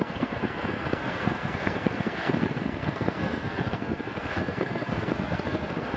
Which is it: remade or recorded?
remade